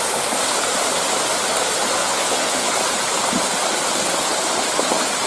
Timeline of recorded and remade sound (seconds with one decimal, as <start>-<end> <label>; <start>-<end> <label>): 0.0-2.0 recorded; 2.0-2.7 remade; 2.7-5.3 recorded